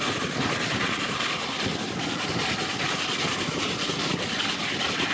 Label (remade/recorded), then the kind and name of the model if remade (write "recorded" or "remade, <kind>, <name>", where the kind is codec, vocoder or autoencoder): recorded